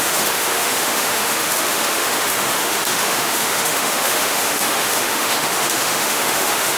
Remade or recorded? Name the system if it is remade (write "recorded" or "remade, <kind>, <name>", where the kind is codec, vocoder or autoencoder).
remade, autoencoder, DAC-VAE